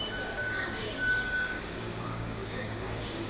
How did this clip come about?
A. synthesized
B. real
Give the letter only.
A